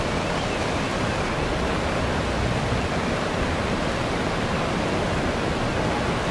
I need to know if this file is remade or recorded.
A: recorded